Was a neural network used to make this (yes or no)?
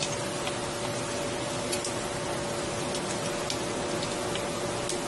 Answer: no